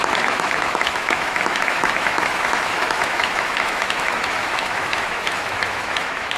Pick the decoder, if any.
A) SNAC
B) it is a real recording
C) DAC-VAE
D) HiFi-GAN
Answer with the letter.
C